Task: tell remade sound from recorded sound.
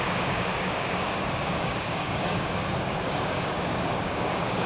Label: remade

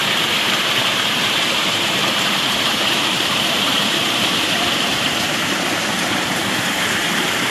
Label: remade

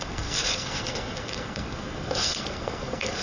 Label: remade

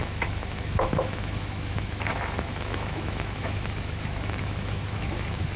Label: remade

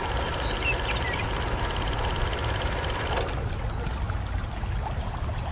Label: recorded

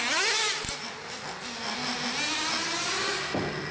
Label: recorded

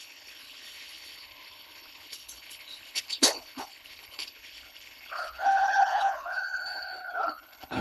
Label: remade